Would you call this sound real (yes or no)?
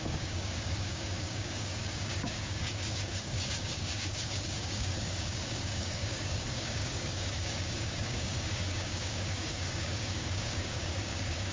no